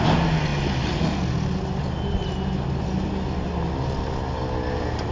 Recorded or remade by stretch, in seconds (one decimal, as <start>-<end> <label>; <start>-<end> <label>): 0.0-5.1 recorded

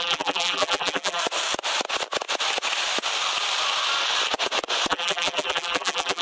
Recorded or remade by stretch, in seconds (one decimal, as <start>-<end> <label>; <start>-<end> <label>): 0.0-1.2 remade; 1.2-4.9 recorded; 4.9-6.2 remade

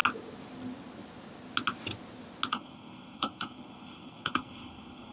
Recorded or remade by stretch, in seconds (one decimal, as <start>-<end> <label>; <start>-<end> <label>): 0.0-2.5 recorded; 2.5-5.1 remade

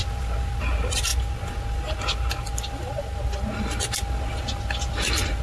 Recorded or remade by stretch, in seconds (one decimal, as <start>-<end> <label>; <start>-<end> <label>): 0.0-5.4 recorded

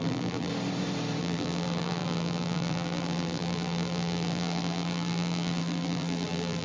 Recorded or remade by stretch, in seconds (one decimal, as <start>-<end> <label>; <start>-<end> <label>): 0.0-0.5 remade; 0.5-1.2 recorded; 1.2-6.6 remade